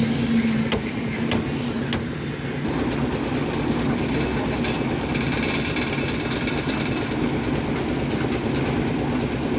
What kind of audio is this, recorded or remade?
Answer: recorded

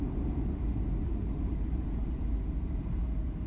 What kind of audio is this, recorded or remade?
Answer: remade